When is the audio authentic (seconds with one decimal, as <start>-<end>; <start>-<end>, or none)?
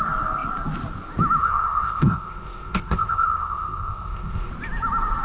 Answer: 0.0-1.4; 4.5-5.2